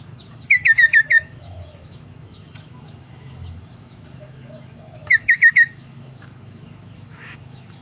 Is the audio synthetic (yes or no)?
yes